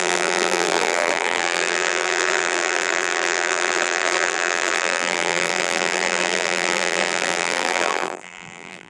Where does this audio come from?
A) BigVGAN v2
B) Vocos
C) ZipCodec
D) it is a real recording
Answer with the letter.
A